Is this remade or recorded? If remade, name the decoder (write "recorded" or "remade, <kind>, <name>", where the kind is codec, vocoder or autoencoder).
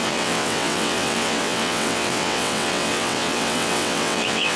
remade, vocoder, WaveNeXt